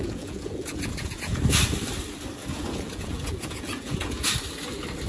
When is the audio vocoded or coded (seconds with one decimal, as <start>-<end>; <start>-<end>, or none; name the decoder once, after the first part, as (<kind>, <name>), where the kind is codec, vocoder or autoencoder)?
0.0-1.4 (vocoder, Vocos); 2.4-4.3